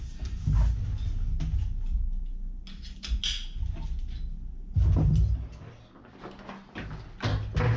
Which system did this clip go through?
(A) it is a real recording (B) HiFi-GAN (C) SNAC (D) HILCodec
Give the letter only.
A